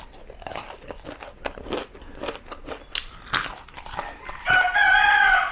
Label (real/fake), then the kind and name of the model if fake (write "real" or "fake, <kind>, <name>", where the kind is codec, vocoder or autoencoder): real